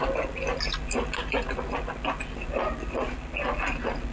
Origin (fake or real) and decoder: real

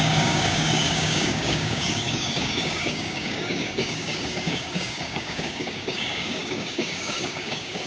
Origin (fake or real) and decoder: fake, codec, DAC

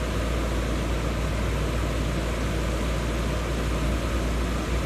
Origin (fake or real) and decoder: real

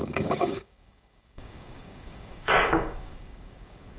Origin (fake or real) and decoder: fake, codec, DAC